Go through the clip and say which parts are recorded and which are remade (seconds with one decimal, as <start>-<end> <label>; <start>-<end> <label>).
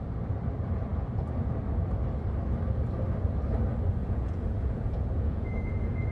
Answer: 0.0-4.0 recorded; 4.0-6.1 remade